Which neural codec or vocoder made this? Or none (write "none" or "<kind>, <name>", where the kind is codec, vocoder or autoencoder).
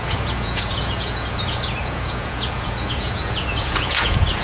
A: vocoder, Vocos